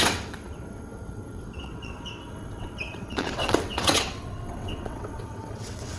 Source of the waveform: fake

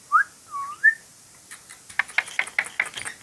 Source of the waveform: real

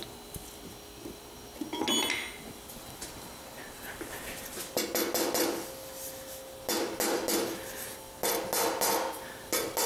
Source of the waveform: real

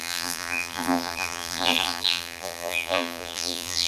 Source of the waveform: fake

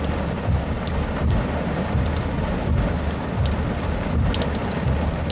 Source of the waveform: real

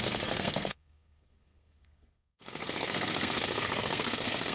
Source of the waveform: fake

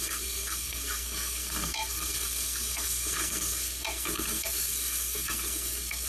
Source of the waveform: fake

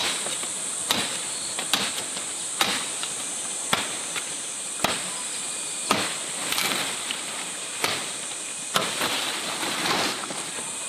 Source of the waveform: fake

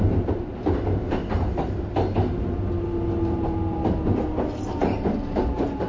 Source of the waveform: real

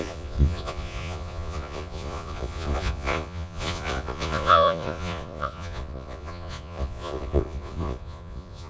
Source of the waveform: fake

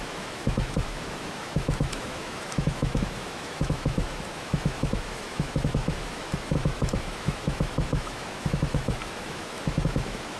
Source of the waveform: fake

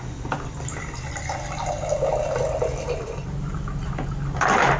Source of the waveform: real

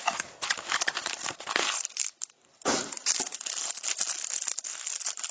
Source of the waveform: real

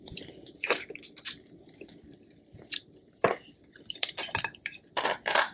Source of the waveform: fake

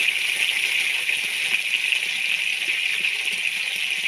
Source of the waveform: real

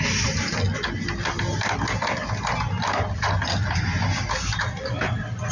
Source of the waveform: real